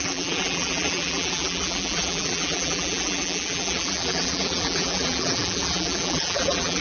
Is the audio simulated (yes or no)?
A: yes